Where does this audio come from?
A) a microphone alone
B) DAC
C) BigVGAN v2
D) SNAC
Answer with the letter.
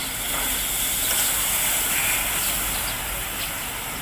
A